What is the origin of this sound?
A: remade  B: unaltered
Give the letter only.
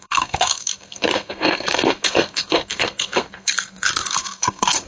A